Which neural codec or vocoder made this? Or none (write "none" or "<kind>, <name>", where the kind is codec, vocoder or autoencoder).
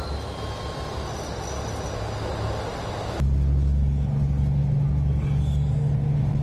none